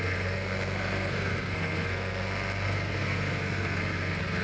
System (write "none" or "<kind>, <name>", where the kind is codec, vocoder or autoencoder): codec, SNAC